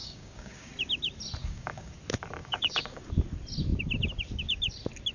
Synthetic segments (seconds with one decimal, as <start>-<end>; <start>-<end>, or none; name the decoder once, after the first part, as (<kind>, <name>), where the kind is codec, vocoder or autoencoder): 0.0-0.7 (codec, DAC); 1.4-2.0; 2.4-3.1